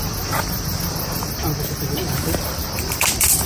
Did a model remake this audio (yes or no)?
yes